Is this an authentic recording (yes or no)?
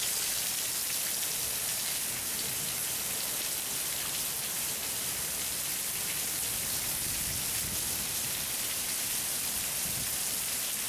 yes